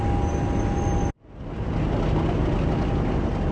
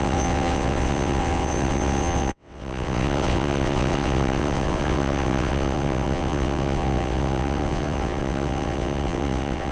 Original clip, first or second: first